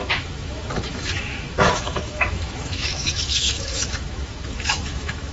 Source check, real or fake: fake